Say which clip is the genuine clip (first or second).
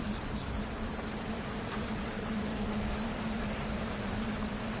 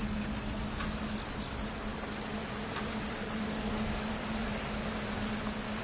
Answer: second